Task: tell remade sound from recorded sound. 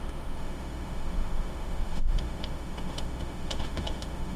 remade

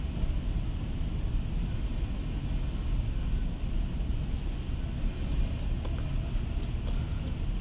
recorded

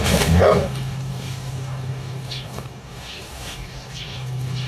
remade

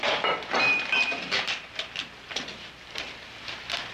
remade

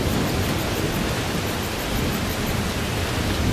recorded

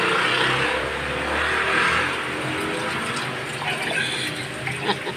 recorded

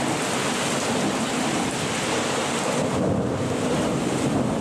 recorded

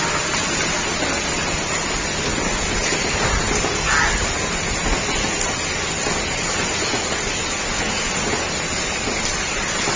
recorded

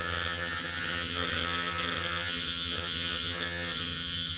remade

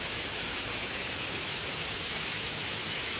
remade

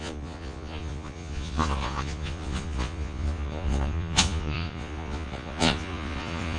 remade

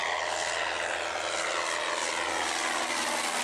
recorded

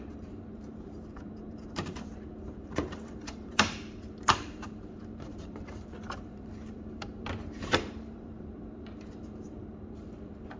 remade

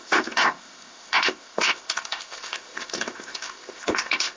remade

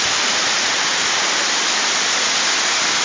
recorded